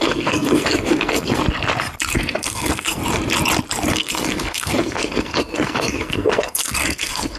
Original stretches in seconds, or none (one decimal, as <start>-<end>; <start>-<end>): 1.4-2.1; 3.0-3.9